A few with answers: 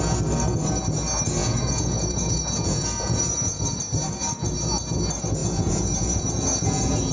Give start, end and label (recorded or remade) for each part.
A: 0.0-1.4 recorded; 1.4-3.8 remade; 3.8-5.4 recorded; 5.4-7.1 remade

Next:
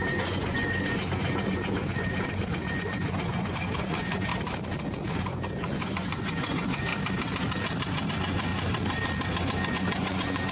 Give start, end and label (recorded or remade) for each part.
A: 0.0-4.3 remade; 4.3-5.1 recorded; 5.1-6.9 remade; 6.9-8.1 recorded; 8.1-8.5 remade; 8.5-9.7 recorded; 9.7-10.5 remade

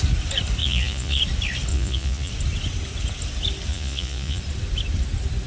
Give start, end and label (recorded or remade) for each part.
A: 0.0-0.6 recorded; 0.6-1.2 remade; 1.2-1.7 recorded; 1.7-2.3 remade; 2.3-3.7 recorded; 3.7-4.4 remade; 4.4-5.5 recorded